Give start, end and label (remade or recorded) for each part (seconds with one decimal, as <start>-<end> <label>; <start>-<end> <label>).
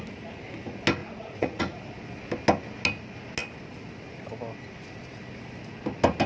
0.0-1.0 recorded; 1.0-1.8 remade; 1.8-6.3 recorded